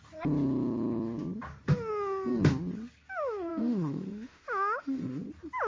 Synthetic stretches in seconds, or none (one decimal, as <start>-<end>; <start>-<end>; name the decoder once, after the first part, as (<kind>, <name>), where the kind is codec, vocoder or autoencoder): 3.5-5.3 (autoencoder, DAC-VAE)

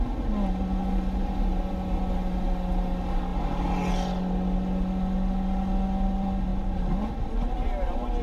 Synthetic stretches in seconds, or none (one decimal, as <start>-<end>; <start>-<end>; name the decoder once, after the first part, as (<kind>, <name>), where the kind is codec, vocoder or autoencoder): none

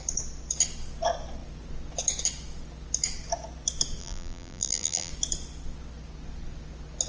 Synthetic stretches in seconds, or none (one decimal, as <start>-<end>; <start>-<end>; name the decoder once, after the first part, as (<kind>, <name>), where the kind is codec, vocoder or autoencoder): 4.0-5.1 (vocoder, BigVGAN v2)

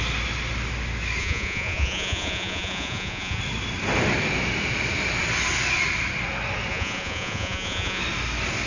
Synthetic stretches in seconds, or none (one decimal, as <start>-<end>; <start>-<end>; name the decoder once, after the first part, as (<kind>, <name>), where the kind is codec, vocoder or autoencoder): 1.2-3.4 (vocoder, Vocos); 6.7-8.0

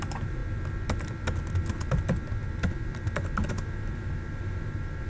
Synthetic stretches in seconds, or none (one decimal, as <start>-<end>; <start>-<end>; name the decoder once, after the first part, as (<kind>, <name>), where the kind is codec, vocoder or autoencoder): 0.0-0.4 (vocoder, BigVGAN v2); 3.5-5.1